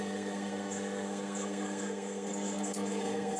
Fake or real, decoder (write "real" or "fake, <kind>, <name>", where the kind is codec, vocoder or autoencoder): fake, codec, SNAC